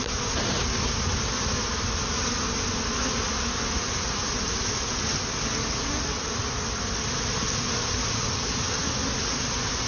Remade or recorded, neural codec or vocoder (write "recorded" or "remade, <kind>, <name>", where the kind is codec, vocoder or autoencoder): recorded